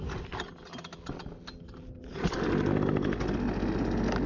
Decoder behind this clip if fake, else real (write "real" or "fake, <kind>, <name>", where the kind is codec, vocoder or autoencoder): real